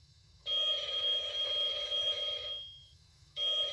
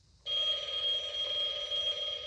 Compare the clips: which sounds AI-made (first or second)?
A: first